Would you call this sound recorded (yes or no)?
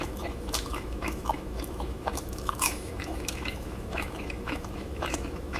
no